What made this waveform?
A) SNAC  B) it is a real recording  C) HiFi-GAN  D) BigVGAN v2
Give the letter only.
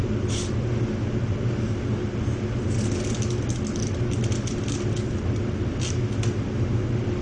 B